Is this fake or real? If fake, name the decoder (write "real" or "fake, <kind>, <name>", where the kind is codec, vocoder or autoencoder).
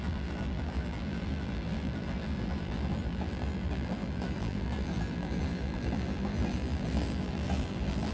fake, vocoder, BigVGAN v2